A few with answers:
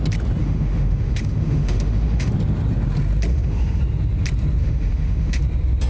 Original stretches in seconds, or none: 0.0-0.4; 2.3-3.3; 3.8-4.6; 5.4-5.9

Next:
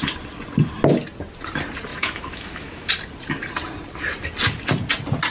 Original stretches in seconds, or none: 0.0-1.9; 2.9-5.3

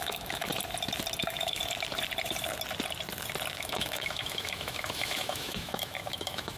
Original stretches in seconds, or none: 0.5-1.2; 1.6-3.5